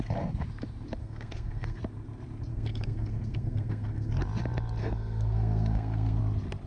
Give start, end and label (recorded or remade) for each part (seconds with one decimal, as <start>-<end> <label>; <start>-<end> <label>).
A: 0.0-1.0 recorded; 1.0-1.8 remade; 1.8-2.5 recorded; 2.5-4.1 remade; 4.1-4.8 recorded; 4.8-6.2 remade; 6.2-6.7 recorded